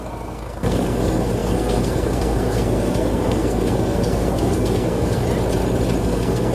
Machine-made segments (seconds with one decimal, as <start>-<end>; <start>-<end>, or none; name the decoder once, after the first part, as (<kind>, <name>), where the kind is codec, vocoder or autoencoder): 0.0-5.2 (codec, SNAC); 6.0-6.5